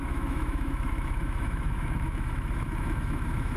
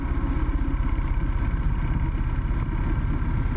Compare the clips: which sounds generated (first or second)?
first